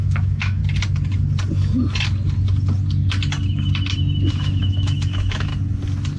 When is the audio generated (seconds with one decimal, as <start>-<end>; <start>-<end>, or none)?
0.0-0.6; 4.3-5.5